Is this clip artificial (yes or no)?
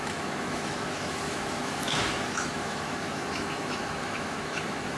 yes